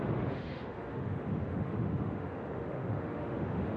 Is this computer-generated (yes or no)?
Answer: yes